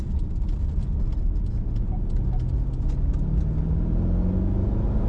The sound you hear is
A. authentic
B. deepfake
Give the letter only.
A